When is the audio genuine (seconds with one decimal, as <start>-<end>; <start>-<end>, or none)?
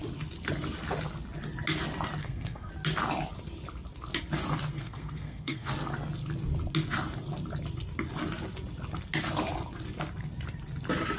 0.0-2.2; 2.7-4.7; 5.7-11.2